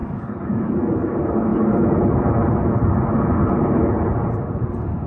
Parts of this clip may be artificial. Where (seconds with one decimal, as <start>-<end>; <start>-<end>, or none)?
0.0-1.1

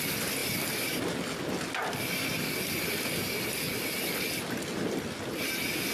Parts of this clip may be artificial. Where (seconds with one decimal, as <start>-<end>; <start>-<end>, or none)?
none

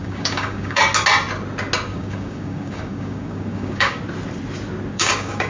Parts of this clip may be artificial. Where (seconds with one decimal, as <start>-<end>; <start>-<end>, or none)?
0.0-0.8; 1.9-4.0; 4.9-5.5

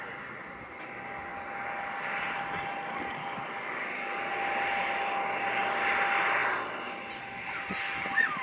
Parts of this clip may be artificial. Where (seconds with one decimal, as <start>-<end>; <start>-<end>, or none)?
3.2-4.3

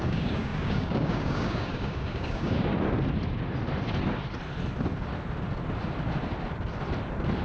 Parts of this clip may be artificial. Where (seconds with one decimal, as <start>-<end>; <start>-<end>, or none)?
0.0-2.7

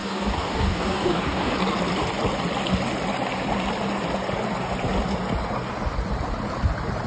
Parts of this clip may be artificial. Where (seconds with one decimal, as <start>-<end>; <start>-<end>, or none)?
0.0-1.5

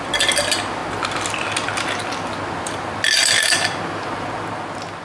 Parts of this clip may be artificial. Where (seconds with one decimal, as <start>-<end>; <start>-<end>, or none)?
none